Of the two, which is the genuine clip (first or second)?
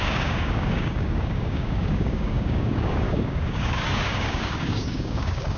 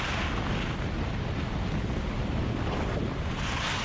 second